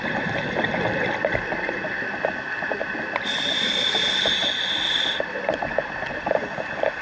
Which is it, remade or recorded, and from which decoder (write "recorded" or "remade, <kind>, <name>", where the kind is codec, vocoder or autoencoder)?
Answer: recorded